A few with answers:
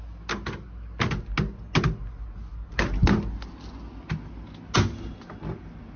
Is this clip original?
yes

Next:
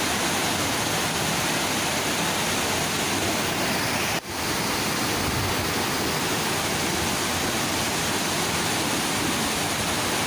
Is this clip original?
yes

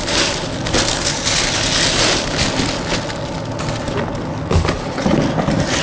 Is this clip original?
yes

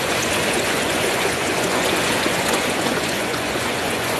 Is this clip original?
no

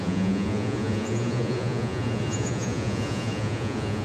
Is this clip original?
no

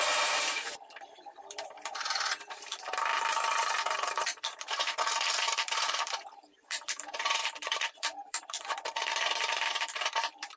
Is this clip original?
no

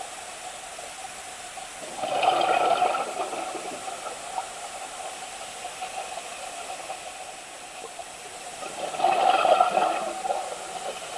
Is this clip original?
yes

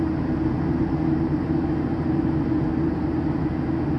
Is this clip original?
yes